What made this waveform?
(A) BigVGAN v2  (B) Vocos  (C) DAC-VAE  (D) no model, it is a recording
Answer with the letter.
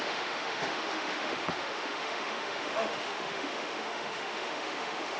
C